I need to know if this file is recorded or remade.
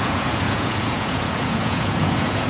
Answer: remade